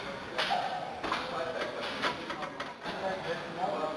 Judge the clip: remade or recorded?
recorded